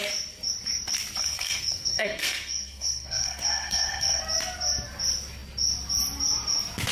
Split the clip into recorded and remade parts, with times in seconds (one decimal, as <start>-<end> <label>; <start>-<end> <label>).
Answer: 0.0-1.2 recorded; 1.2-4.2 remade; 4.2-6.9 recorded